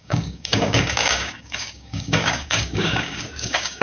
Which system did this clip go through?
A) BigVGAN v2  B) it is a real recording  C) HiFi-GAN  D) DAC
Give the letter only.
D